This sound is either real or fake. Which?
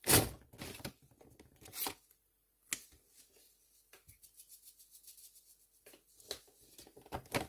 real